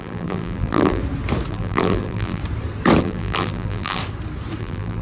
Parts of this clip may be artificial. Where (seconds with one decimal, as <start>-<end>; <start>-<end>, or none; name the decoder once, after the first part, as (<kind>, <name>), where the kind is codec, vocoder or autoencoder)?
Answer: 0.0-1.0 (vocoder, BigVGAN v2); 1.5-2.4; 3.0-4.0; 4.6-5.0